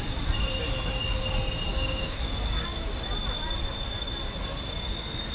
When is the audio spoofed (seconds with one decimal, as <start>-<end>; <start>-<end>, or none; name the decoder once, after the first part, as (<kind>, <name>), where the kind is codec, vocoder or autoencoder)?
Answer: 1.7-2.2 (codec, DAC)